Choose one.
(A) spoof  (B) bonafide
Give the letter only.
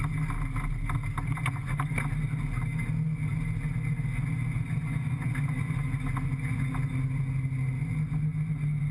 B